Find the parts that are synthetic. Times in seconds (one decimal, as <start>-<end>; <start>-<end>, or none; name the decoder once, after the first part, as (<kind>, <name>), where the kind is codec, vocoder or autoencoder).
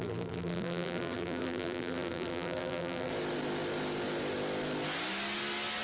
0.0-3.1 (vocoder, BigVGAN v2)